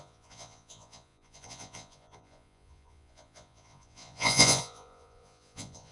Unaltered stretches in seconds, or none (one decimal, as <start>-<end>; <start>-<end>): none